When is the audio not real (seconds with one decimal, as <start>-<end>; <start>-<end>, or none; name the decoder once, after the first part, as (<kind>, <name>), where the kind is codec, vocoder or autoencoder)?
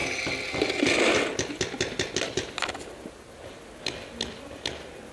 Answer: none